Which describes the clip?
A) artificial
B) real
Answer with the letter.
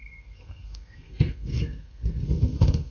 A